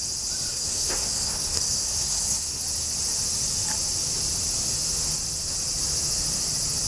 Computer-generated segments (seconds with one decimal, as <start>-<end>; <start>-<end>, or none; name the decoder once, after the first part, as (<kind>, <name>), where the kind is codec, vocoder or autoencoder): 0.5-2.6 (codec, SNAC)